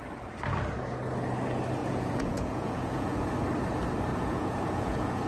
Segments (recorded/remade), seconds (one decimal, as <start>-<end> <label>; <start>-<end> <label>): 0.0-1.8 recorded; 1.8-3.3 remade; 3.3-4.1 recorded; 4.1-5.3 remade